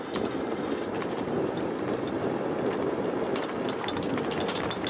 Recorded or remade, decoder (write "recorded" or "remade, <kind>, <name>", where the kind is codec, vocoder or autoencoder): recorded